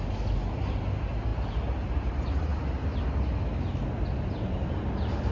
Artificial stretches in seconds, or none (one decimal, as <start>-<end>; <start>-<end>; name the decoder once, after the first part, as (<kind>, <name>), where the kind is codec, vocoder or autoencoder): none

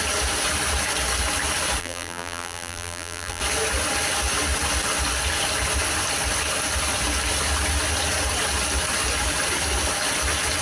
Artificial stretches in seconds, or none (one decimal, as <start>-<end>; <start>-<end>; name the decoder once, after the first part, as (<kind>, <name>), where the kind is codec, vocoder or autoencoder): 1.8-3.4 (vocoder, BigVGAN v2)

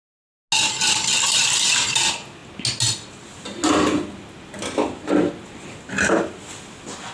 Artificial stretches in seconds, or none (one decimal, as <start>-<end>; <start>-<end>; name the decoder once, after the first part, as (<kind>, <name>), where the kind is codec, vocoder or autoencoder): none

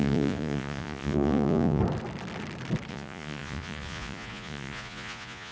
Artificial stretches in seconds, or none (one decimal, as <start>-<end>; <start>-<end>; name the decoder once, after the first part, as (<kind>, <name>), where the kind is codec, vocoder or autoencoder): 0.0-1.8 (vocoder, Vocos); 2.9-5.5

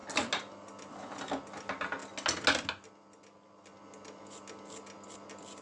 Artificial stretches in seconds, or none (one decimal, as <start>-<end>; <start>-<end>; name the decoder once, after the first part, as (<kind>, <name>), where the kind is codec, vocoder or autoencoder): none

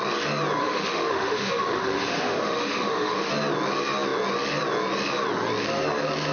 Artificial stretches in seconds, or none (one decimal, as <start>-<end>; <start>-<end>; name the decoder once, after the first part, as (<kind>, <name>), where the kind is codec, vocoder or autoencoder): 0.6-3.3 (autoencoder, DAC-VAE)